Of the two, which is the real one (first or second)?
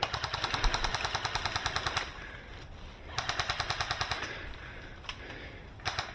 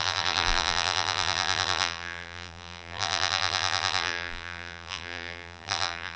first